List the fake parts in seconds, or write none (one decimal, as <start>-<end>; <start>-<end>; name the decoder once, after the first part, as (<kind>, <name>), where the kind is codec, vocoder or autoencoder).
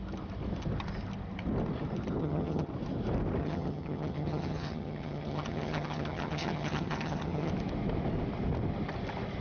2.2-2.7 (vocoder, HiFi-GAN); 3.4-7.5